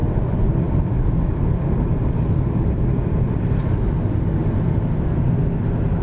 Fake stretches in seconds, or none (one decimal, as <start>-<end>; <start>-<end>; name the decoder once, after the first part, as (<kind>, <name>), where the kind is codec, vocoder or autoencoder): 0.0-3.6 (vocoder, BigVGAN v2); 4.4-5.4

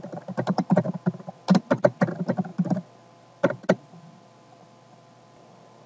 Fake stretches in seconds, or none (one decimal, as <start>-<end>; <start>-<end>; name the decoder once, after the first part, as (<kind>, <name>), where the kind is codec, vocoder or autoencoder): none

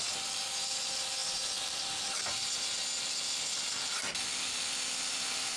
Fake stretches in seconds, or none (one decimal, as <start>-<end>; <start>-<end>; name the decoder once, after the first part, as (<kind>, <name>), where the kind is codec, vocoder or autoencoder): none

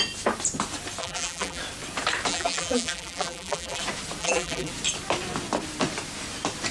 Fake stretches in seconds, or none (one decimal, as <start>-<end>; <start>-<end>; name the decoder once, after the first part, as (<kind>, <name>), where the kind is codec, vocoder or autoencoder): 1.0-1.6 (vocoder, BigVGAN v2); 2.3-3.8; 4.2-4.7

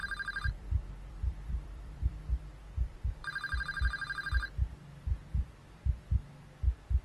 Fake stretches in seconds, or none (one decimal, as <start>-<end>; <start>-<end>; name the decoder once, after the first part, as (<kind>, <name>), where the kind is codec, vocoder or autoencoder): 0.0-3.1 (vocoder, BigVGAN v2)

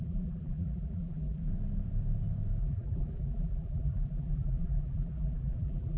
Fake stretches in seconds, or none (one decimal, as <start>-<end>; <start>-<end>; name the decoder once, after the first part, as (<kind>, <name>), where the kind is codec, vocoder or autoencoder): 0.0-1.5 (vocoder, BigVGAN v2); 2.6-6.0

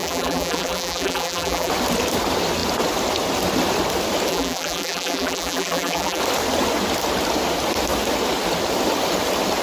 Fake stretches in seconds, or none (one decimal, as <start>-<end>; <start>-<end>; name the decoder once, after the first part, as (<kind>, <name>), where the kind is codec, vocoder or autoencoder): 0.0-1.7 (vocoder, BigVGAN v2); 4.3-6.2